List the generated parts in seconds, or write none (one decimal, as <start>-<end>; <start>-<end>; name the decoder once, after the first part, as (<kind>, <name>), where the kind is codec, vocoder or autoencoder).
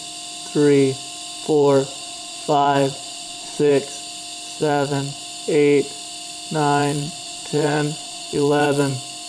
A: 1.4-3.7 (vocoder, Vocos); 4.6-5.2; 6.8-8.9